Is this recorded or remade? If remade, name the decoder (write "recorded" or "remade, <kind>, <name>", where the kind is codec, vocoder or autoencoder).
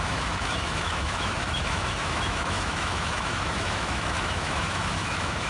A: remade, autoencoder, DAC-VAE